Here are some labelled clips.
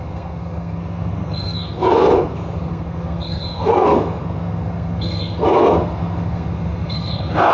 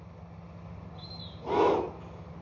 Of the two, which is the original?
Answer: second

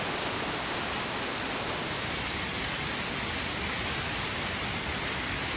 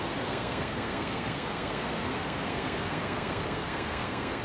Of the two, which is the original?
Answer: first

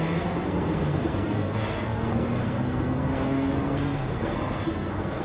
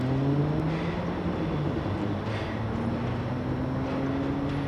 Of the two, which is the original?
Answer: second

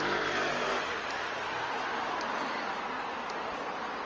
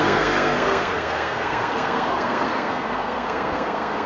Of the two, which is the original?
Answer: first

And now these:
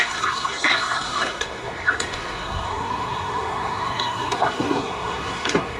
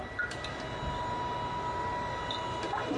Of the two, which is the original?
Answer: second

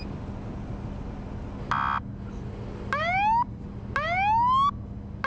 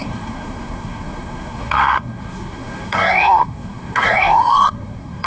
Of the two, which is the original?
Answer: first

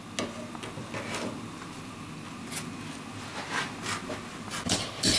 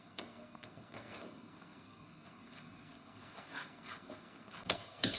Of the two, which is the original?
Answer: first